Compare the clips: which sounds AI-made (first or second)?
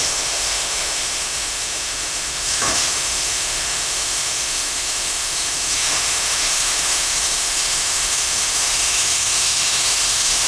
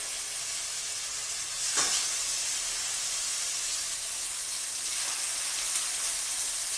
first